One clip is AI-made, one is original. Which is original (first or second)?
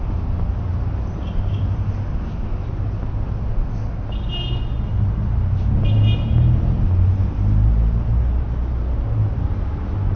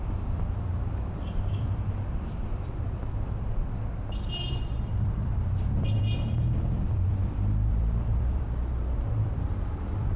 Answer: first